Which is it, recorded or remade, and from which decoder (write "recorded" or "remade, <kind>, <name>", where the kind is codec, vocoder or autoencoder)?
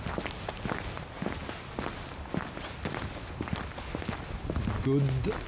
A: recorded